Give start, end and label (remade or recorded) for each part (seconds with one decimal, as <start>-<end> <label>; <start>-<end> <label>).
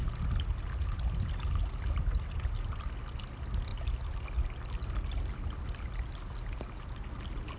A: 0.0-7.6 recorded